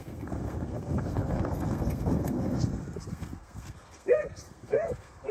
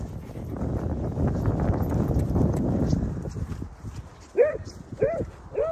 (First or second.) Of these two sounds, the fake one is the first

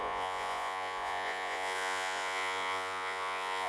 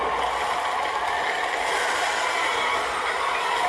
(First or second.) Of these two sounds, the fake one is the first